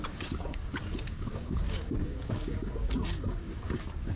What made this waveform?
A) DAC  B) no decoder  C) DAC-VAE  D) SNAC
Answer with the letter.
A